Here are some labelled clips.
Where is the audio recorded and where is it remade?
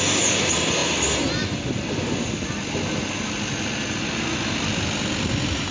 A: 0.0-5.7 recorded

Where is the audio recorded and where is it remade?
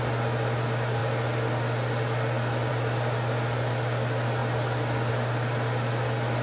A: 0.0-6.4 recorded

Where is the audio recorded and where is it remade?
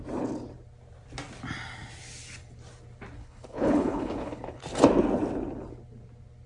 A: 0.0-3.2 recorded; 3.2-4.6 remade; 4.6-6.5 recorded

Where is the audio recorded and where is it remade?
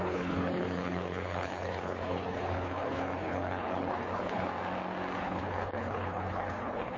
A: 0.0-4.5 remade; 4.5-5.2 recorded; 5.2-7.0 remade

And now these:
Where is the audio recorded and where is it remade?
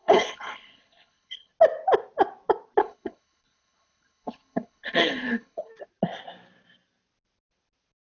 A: 0.0-1.5 remade; 1.5-2.8 recorded; 2.8-5.7 remade; 5.7-8.0 recorded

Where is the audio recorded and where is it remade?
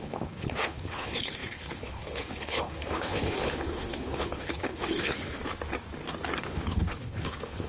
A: 0.0-5.4 remade; 5.4-6.4 recorded; 6.4-7.7 remade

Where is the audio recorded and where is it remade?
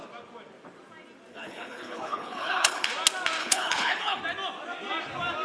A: 0.0-1.3 recorded; 1.3-2.9 remade; 2.9-3.4 recorded; 3.4-4.2 remade; 4.2-5.4 recorded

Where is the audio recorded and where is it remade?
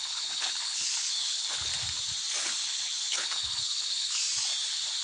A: 0.0-1.7 remade; 1.7-2.4 recorded; 2.4-4.2 remade; 4.2-5.0 recorded